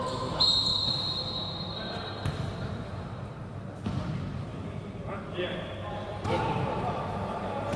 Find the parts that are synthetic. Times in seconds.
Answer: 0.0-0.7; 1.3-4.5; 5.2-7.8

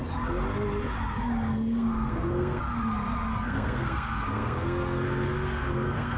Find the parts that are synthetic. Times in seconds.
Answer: 1.5-2.6; 3.3-6.2

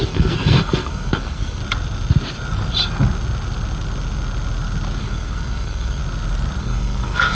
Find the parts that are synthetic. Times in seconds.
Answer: 0.0-1.6; 5.0-6.0; 6.6-7.3

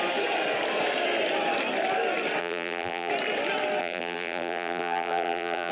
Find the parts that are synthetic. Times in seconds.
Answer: 2.4-3.1; 3.8-5.7